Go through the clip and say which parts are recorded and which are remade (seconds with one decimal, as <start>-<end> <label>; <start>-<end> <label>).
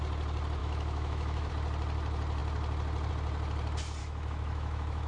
0.0-0.6 recorded; 0.6-1.5 remade; 1.5-4.0 recorded; 4.0-5.1 remade